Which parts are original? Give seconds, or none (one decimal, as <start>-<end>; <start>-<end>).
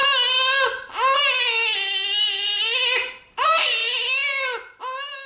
0.0-3.2; 3.8-5.3